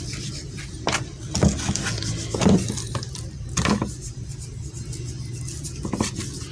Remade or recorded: recorded